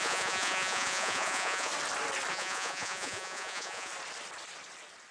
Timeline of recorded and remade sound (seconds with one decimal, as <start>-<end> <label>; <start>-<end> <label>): 0.0-1.7 remade; 1.7-2.3 recorded; 2.3-3.9 remade; 3.9-5.1 recorded